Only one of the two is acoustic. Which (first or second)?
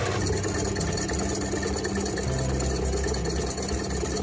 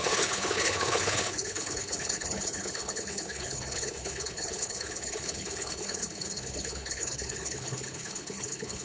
first